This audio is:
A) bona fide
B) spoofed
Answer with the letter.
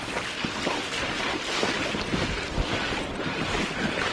A